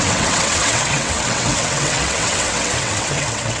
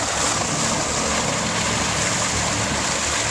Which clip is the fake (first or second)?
first